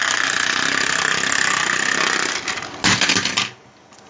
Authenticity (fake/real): real